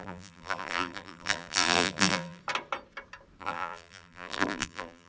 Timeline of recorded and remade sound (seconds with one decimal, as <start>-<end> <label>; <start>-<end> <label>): 0.0-2.4 remade; 2.4-3.4 recorded; 3.4-5.1 remade